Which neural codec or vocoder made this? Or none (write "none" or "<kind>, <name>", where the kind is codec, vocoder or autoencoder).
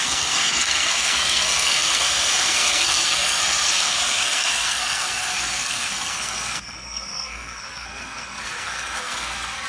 codec, SNAC